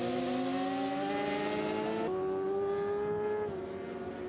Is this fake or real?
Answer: real